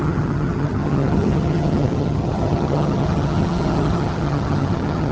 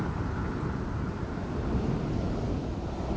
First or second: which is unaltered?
second